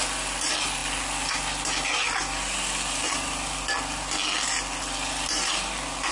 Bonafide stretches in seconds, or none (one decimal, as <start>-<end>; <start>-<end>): 0.0-6.1